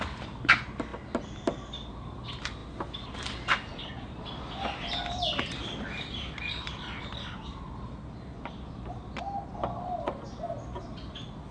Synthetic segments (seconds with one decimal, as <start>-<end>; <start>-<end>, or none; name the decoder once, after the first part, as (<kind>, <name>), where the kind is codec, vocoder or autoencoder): none